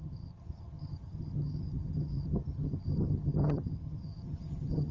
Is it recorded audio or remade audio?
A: remade